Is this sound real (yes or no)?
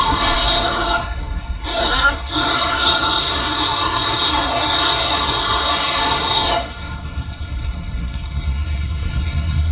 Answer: no